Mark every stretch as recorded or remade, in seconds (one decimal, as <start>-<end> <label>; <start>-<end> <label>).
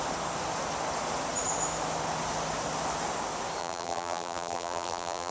0.0-3.6 recorded; 3.6-5.3 remade